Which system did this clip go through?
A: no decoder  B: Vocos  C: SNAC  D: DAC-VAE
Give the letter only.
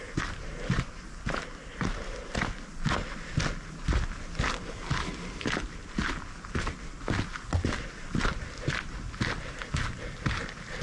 A